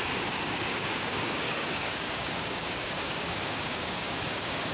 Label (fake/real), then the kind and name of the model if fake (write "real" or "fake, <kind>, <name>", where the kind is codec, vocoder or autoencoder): fake, codec, DAC